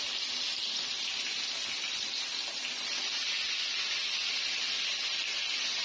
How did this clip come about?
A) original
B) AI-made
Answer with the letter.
A